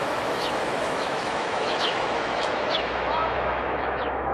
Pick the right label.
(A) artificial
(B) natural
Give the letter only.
A